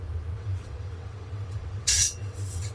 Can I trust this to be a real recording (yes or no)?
no